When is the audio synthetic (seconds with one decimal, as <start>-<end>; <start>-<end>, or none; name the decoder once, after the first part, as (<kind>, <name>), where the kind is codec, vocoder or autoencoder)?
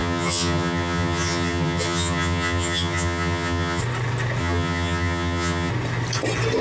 0.0-3.8 (vocoder, HiFi-GAN); 4.4-5.7